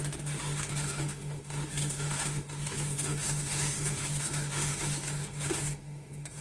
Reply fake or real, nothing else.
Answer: fake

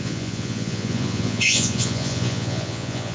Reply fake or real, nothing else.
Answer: fake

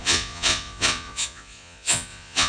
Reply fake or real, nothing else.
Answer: fake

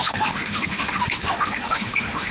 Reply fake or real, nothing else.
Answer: fake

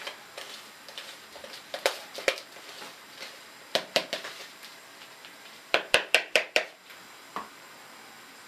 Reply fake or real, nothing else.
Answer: fake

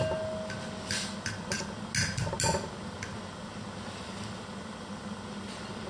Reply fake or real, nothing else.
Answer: real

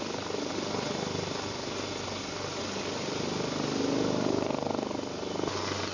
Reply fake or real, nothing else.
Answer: real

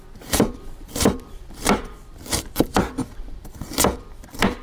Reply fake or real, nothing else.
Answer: fake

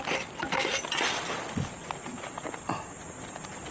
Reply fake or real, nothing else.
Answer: real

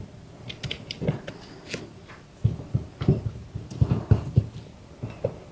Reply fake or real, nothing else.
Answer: real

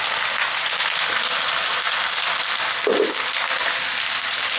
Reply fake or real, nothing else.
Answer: real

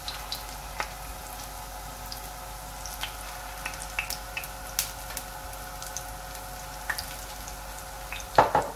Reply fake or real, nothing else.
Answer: real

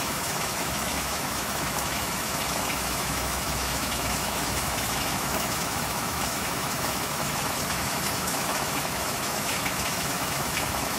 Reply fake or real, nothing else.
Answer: fake